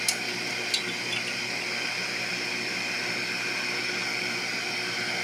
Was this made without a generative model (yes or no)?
yes